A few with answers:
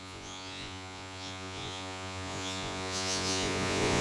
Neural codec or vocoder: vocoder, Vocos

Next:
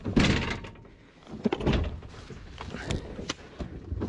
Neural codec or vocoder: none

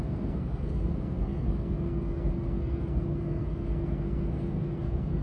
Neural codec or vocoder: codec, SNAC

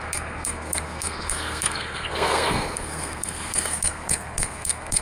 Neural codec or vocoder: codec, SNAC